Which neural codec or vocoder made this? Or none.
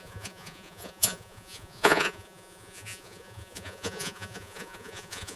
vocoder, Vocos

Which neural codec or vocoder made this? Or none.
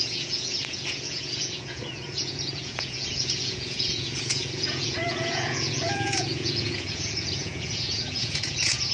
vocoder, Vocos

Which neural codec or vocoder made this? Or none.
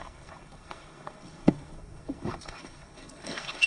codec, SNAC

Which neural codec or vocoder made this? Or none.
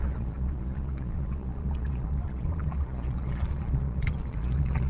vocoder, Vocos